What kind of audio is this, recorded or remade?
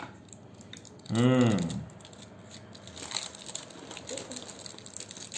recorded